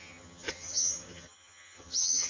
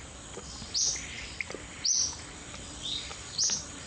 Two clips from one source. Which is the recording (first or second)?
second